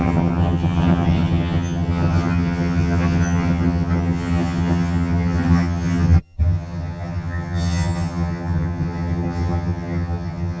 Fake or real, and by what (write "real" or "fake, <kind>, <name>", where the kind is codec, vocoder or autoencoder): fake, vocoder, HiFi-GAN